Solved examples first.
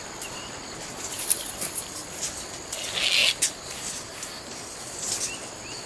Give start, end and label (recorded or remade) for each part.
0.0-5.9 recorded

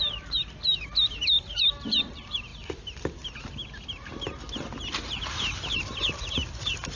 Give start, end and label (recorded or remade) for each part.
0.0-2.5 remade; 2.5-5.3 recorded; 5.3-7.0 remade

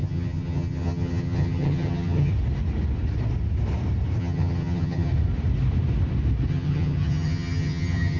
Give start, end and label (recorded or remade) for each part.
0.0-2.3 remade; 2.3-4.2 recorded; 4.2-5.1 remade; 5.1-6.5 recorded; 6.5-8.2 remade

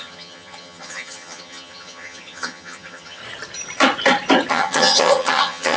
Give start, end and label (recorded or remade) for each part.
0.0-3.2 remade; 3.2-4.5 recorded; 4.5-5.8 remade

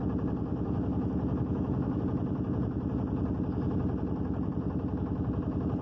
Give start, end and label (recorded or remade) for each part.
0.0-0.5 recorded; 0.5-2.0 remade; 2.0-5.8 recorded